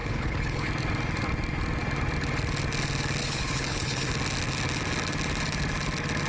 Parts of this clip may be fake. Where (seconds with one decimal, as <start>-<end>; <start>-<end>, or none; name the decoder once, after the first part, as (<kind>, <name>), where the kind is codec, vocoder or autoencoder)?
0.0-0.7 (codec, HILCodec); 3.2-4.1